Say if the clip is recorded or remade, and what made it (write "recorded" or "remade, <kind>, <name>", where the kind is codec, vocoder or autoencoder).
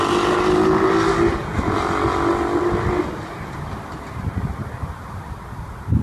recorded